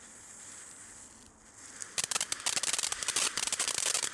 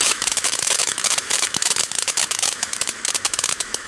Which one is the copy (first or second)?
second